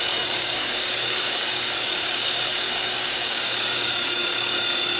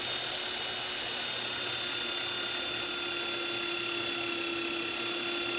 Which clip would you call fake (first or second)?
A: first